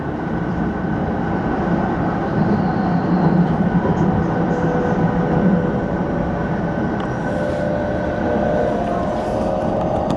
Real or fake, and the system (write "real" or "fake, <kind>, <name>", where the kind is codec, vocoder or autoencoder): real